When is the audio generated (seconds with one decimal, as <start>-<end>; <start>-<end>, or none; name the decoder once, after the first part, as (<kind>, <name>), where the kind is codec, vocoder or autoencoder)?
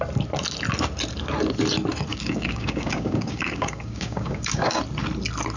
2.1-4.8 (codec, DAC)